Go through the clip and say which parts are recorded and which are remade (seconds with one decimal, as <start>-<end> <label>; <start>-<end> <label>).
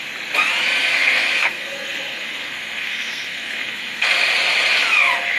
0.0-0.9 recorded; 0.9-4.1 remade; 4.1-5.4 recorded